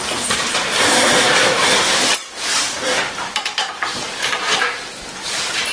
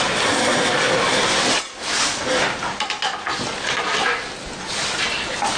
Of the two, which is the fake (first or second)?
first